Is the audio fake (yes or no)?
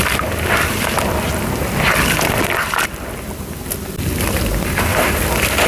yes